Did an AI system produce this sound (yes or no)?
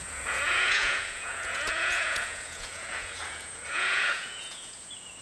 yes